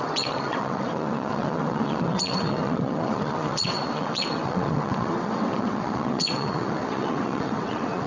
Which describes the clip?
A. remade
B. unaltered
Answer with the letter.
A